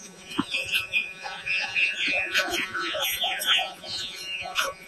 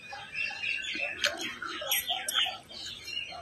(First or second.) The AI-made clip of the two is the first